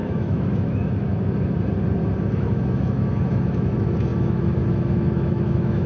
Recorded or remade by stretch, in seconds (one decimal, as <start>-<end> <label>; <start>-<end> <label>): 0.0-1.1 remade; 1.1-2.3 recorded; 2.3-5.9 remade